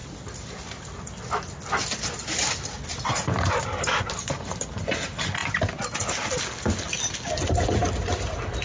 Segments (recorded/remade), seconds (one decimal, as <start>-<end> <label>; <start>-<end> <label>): 0.0-2.9 recorded; 2.9-4.6 remade; 4.6-8.6 recorded